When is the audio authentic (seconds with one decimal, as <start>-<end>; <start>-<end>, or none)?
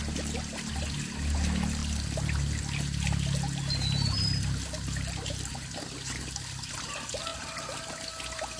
0.0-8.6